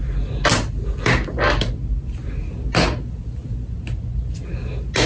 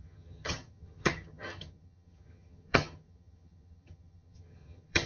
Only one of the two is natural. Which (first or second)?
first